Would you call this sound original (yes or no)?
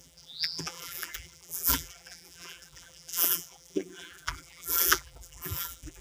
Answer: no